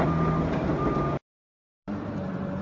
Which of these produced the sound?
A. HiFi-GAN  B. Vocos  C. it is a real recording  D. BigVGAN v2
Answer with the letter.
D